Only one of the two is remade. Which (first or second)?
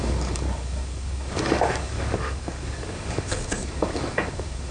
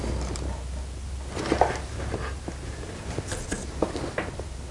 first